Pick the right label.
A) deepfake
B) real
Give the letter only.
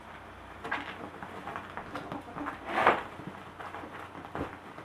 B